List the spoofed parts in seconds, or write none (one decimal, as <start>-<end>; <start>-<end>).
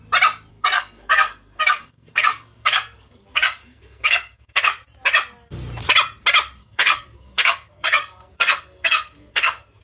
0.5-4.7; 6.6-9.8